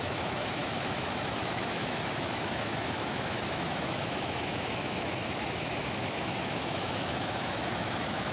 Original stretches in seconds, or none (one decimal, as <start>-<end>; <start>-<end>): none